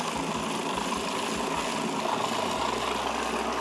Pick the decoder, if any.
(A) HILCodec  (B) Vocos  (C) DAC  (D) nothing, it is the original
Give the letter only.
D